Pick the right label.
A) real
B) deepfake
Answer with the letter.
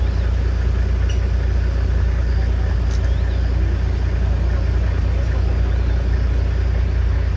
A